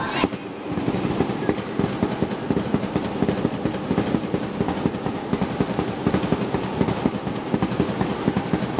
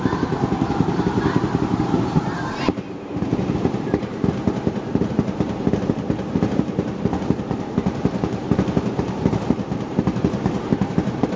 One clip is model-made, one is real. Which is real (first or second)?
first